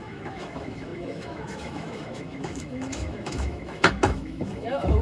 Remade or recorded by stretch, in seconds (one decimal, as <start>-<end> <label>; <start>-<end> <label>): 0.0-5.0 remade